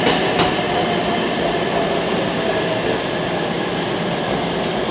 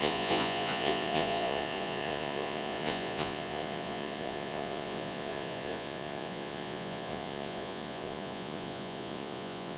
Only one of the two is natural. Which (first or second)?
first